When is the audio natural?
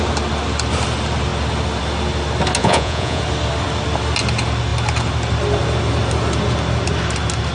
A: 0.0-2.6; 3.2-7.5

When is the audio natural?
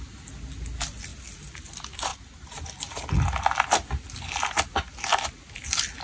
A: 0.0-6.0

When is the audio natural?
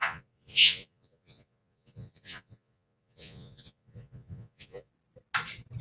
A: 4.9-5.8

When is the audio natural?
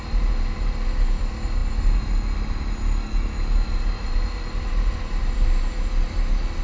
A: 0.0-6.6